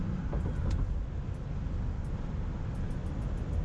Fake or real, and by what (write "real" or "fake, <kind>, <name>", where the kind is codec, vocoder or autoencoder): real